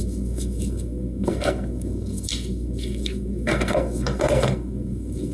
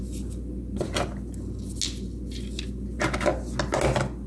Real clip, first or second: second